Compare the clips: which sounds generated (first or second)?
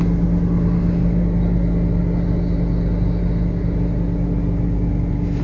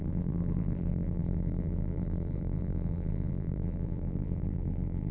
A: second